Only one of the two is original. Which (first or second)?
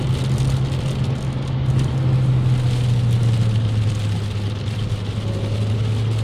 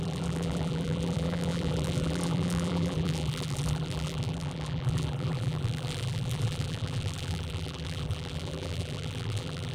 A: first